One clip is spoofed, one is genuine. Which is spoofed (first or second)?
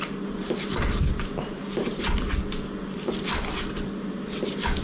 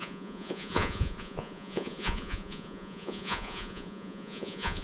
second